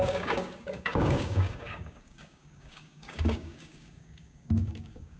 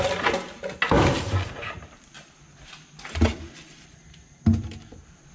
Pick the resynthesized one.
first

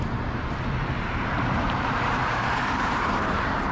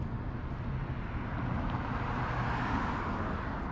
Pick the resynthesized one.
first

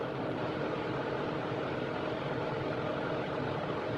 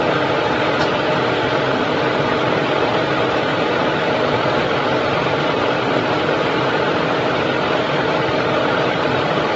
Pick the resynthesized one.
second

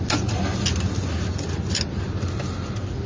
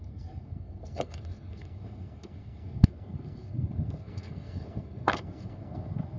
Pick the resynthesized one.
second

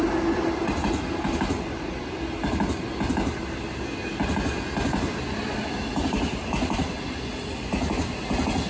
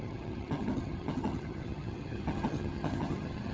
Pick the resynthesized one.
second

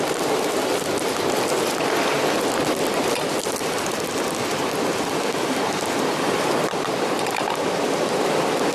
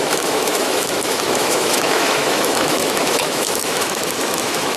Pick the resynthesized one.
second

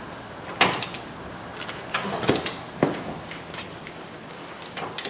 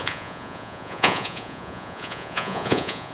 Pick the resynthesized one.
second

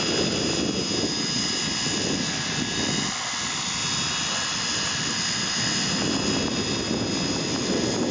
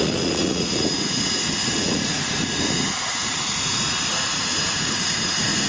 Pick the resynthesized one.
second